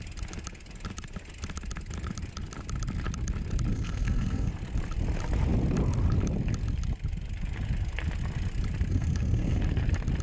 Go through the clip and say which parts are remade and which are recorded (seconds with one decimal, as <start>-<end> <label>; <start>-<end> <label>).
0.0-3.7 recorded; 3.7-4.5 remade; 4.5-8.9 recorded; 8.9-9.6 remade; 9.6-10.2 recorded